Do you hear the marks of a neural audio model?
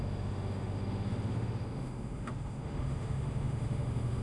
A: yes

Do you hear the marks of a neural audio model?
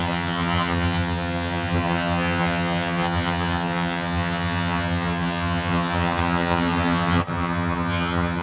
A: yes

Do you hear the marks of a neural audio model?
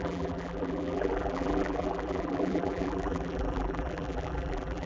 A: yes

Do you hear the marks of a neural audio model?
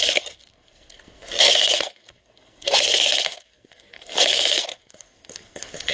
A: yes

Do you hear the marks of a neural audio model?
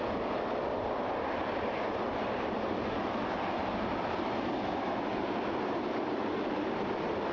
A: no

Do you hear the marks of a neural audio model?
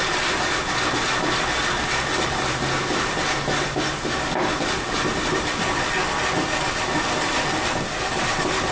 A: no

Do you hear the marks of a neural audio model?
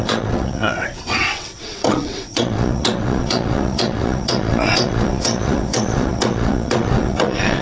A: yes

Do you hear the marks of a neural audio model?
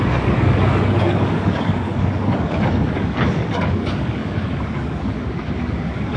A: yes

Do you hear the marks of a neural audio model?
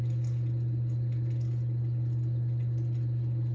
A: no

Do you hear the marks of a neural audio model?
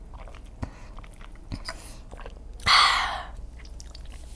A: no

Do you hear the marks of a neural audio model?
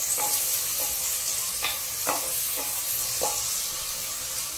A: no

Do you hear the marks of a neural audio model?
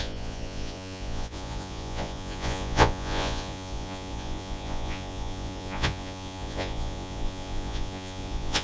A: yes